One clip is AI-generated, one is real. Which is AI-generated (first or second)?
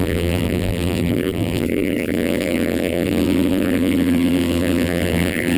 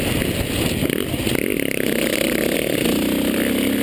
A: first